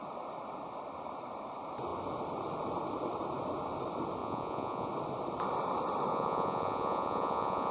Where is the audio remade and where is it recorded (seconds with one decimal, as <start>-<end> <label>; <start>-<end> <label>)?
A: 0.0-4.2 recorded; 4.2-4.9 remade; 4.9-6.1 recorded; 6.1-7.7 remade